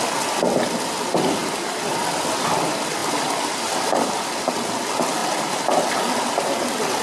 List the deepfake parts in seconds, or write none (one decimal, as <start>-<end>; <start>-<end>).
none